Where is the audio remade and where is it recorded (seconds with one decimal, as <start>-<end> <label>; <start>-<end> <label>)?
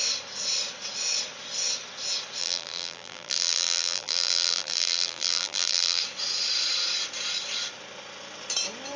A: 0.0-2.4 recorded; 2.4-6.0 remade; 6.0-9.0 recorded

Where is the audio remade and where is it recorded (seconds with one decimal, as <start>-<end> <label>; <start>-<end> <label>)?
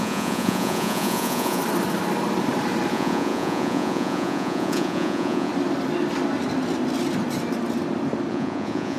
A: 0.0-1.6 remade; 1.6-2.9 recorded; 2.9-5.5 remade; 5.5-8.3 recorded; 8.3-9.0 remade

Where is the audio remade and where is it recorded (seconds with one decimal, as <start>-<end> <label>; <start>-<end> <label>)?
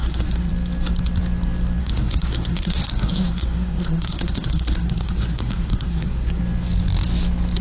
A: 0.0-0.5 remade; 0.5-1.8 recorded; 1.8-6.4 remade; 6.4-7.6 recorded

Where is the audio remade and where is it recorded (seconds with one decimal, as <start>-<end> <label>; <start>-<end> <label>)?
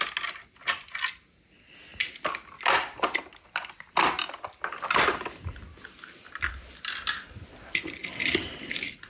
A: 0.0-9.1 recorded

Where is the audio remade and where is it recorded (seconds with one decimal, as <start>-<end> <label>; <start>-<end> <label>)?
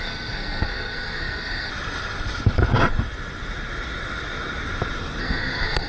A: 0.0-1.7 remade; 1.7-5.2 recorded; 5.2-5.9 remade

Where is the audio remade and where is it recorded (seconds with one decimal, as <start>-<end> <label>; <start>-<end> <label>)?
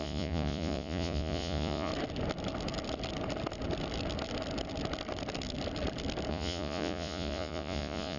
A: 0.0-1.9 remade; 1.9-6.3 recorded; 6.3-8.2 remade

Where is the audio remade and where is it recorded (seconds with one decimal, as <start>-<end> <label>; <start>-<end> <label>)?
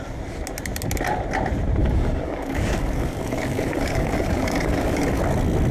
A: 0.0-1.8 recorded; 1.8-5.2 remade; 5.2-5.7 recorded